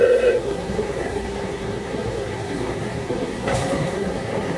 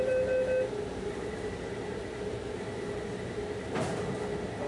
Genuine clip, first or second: second